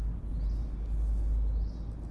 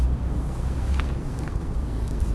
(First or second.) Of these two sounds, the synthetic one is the second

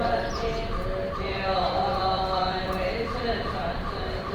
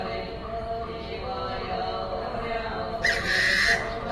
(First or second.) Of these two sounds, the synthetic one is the first